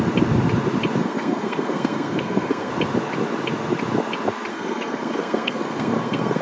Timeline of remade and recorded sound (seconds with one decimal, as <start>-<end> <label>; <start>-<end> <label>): 0.0-1.0 recorded; 1.0-2.7 remade; 2.7-4.5 recorded; 4.5-6.4 remade

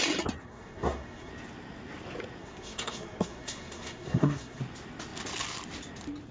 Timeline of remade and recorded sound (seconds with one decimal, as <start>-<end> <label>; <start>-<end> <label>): 0.0-0.4 recorded; 0.4-1.3 remade; 1.3-2.4 recorded; 2.4-4.6 remade; 4.6-6.3 recorded

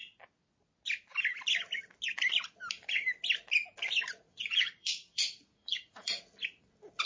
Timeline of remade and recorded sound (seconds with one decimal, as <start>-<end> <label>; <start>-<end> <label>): 0.0-4.3 recorded; 4.3-6.2 remade; 6.2-7.1 recorded

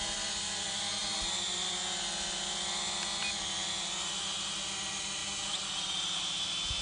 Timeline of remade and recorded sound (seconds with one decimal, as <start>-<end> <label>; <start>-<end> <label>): 0.0-6.8 recorded

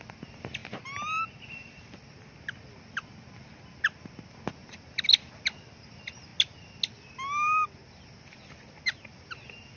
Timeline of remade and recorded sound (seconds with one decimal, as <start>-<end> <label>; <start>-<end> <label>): 0.0-9.8 recorded